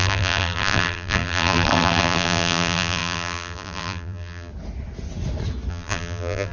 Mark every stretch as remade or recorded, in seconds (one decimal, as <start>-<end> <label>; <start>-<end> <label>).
0.0-4.5 remade; 4.5-5.7 recorded; 5.7-6.5 remade